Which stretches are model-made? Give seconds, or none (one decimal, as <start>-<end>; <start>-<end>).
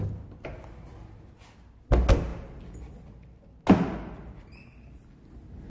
none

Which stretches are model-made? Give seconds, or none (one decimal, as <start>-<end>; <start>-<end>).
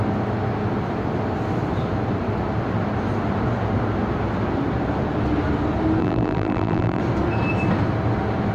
6.0-7.0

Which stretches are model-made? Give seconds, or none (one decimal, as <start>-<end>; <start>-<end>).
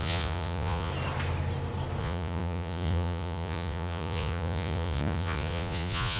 0.0-0.9; 2.0-6.2